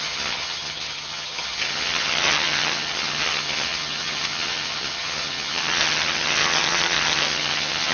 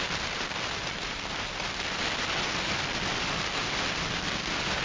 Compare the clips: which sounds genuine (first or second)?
second